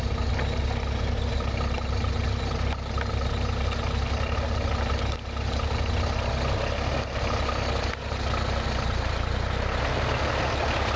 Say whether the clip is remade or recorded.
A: recorded